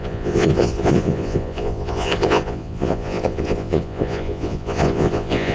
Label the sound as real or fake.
fake